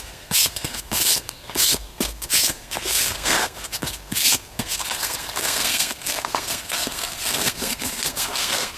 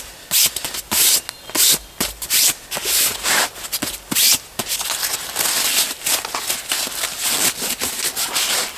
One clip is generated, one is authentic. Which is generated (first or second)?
first